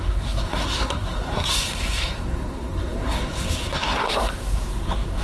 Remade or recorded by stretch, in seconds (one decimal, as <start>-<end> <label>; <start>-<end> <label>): 0.0-5.2 remade